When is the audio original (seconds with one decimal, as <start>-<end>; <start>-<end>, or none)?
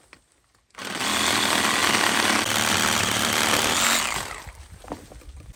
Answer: 0.0-5.6